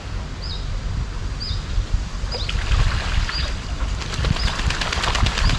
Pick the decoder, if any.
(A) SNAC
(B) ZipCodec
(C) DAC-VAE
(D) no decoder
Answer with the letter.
D